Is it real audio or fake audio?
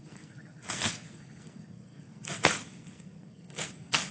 fake